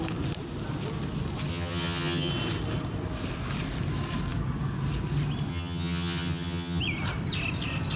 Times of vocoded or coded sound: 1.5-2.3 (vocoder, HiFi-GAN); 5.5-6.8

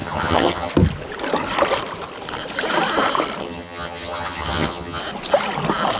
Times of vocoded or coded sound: 0.0-0.7 (vocoder, HiFi-GAN); 3.4-5.0